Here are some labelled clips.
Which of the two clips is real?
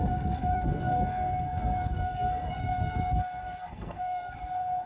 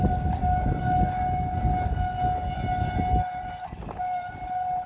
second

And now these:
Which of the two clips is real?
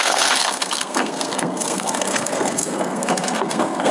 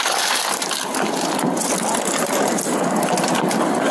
second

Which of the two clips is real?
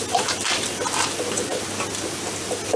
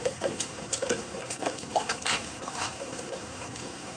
first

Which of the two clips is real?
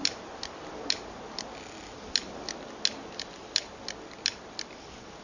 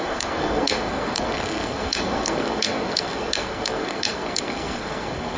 first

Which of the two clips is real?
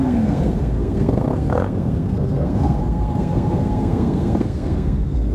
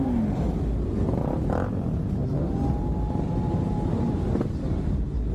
second